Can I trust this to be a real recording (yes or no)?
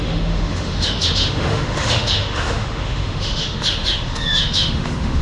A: no